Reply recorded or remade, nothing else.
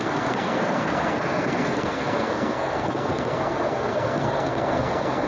remade